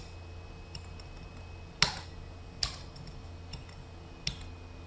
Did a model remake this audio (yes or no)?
no